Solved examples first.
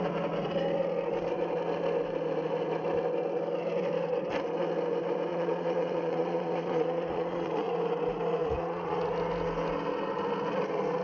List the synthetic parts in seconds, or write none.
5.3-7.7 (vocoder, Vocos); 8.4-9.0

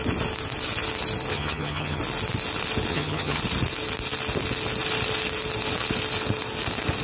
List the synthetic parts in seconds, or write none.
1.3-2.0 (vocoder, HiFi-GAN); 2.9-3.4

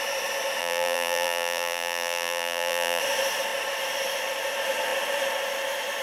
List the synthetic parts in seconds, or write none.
0.6-3.0 (vocoder, BigVGAN v2)

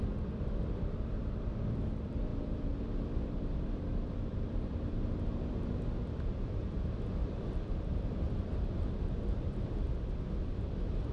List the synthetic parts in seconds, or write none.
0.0-11.1 (vocoder, BigVGAN v2)

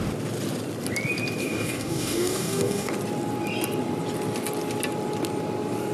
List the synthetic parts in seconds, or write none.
1.4-2.9 (codec, DAC)